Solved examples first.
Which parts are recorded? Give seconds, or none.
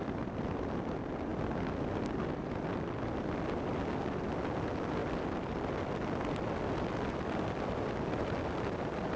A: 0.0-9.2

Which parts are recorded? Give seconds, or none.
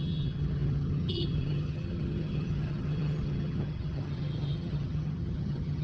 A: none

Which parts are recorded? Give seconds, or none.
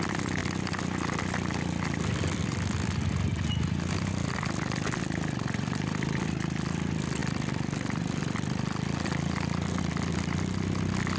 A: 0.0-11.2